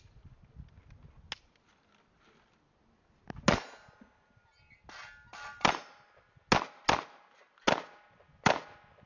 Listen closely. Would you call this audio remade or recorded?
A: recorded